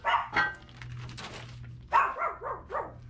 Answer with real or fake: real